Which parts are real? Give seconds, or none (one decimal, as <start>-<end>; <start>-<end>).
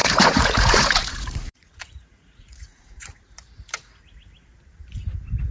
3.3-5.5